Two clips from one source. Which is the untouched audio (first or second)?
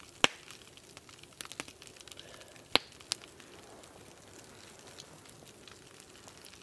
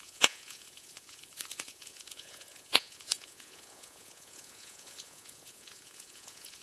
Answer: first